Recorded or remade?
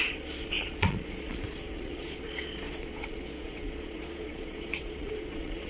remade